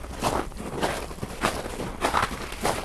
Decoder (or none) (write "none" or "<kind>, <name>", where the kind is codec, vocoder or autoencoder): none